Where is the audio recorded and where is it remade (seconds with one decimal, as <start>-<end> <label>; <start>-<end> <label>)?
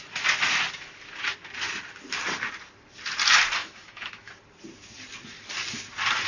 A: 0.0-3.6 recorded; 3.6-4.3 remade; 4.3-6.3 recorded